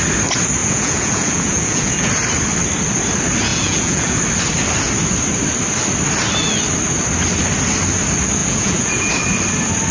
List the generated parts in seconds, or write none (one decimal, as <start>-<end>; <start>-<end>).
0.6-2.1; 3.5-4.2; 8.4-9.1